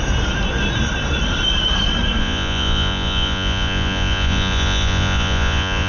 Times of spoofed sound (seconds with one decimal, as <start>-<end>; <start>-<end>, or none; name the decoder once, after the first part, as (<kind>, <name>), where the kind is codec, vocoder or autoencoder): 2.2-5.9 (vocoder, Vocos)